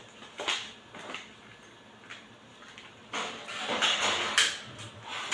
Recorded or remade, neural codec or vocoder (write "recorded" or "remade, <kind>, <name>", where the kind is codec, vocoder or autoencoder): recorded